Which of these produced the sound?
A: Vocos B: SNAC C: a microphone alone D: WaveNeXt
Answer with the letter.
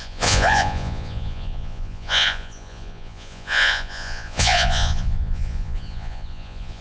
A